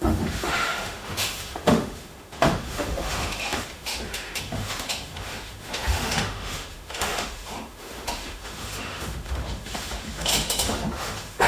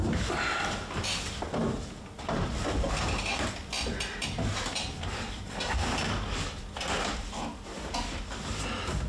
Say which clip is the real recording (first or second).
second